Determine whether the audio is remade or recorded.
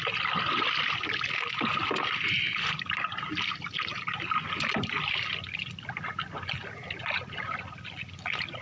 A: recorded